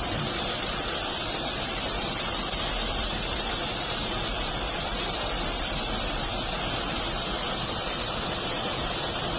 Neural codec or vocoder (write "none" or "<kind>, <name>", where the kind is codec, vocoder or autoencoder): vocoder, BigVGAN v2